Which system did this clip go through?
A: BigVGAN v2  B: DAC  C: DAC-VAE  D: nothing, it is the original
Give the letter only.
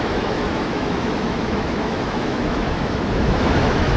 C